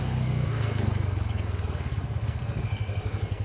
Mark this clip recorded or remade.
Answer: remade